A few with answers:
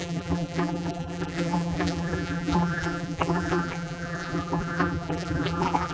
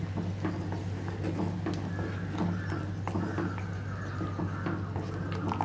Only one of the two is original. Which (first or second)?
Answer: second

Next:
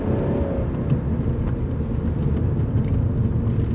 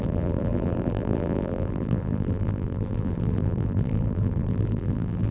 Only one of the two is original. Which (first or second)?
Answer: first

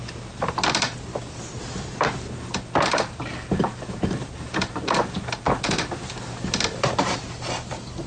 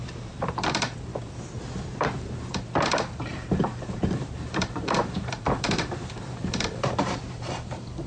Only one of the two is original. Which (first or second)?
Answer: first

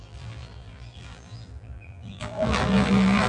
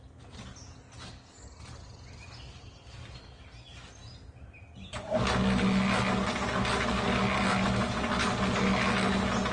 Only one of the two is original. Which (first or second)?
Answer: second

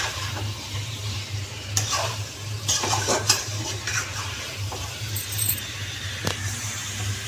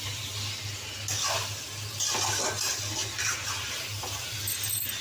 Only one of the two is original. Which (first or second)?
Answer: second